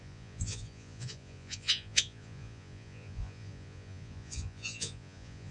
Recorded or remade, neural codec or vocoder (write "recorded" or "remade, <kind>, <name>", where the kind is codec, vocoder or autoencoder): remade, vocoder, Vocos